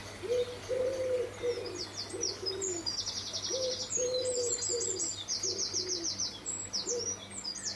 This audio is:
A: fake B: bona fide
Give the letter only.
B